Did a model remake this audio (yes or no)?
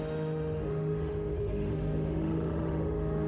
yes